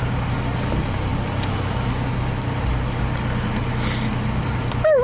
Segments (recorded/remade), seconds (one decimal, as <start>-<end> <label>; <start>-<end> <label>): 0.0-5.0 recorded